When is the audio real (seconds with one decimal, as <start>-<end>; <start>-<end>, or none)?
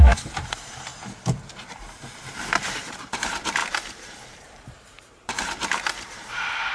0.9-1.7; 2.2-2.8